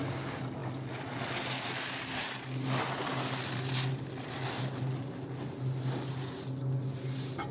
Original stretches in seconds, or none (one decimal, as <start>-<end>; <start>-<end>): 0.0-7.5